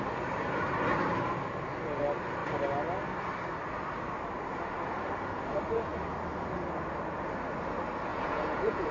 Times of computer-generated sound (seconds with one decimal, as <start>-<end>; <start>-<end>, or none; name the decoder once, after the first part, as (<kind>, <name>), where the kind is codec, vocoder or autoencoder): 8.1-8.9 (vocoder, Vocos)